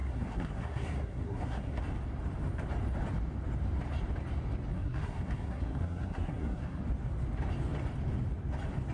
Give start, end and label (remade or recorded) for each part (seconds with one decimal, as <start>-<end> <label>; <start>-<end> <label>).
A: 0.0-1.8 remade; 1.8-4.7 recorded; 4.7-6.8 remade; 6.8-8.9 recorded